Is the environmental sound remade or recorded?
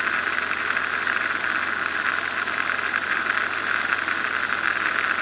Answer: recorded